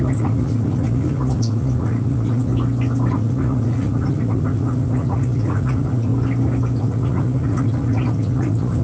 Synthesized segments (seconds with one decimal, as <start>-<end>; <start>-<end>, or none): 0.0-2.5; 3.1-6.1; 6.8-8.8